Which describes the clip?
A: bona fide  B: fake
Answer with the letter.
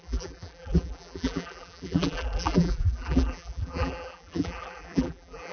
B